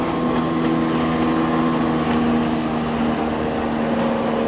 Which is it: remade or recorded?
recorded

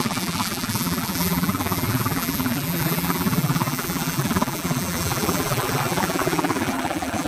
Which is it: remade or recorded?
remade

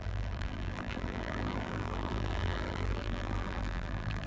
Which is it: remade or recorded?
remade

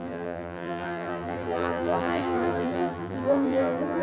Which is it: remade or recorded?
remade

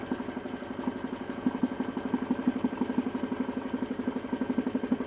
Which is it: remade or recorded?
recorded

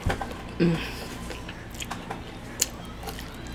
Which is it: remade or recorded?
recorded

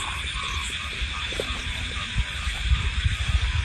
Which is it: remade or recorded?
remade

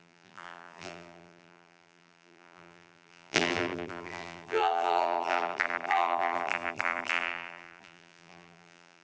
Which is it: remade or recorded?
remade